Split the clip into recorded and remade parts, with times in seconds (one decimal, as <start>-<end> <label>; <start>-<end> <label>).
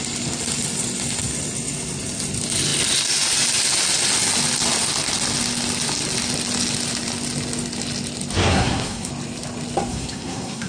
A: 0.0-8.5 recorded; 8.5-9.1 remade; 9.1-9.9 recorded; 9.9-10.7 remade